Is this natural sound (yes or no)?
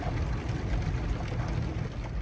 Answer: yes